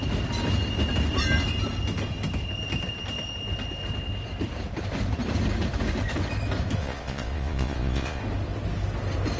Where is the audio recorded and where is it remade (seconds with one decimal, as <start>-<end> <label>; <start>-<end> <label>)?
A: 0.0-6.8 recorded; 6.8-8.2 remade; 8.2-9.4 recorded